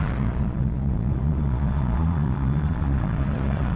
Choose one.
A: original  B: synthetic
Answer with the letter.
B